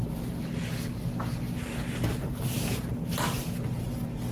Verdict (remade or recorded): recorded